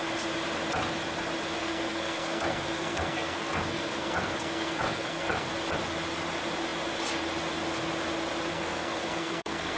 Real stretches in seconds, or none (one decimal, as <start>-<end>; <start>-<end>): 0.0-1.6; 5.5-8.5